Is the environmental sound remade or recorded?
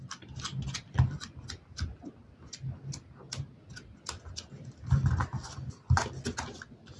recorded